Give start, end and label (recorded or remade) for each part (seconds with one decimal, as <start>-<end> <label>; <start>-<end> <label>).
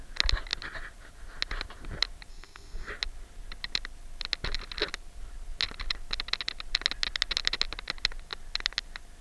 0.0-2.3 recorded; 2.3-2.9 remade; 2.9-9.2 recorded